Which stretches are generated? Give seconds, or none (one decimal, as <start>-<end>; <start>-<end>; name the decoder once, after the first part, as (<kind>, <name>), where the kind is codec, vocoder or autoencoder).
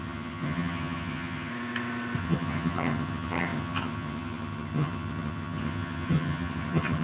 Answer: 0.0-1.5 (vocoder, HiFi-GAN); 2.2-7.0